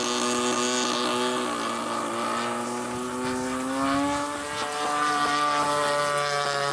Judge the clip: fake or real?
real